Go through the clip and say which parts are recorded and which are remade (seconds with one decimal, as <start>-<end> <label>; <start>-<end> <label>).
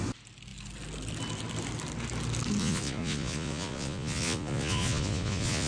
0.0-2.6 recorded; 2.6-5.7 remade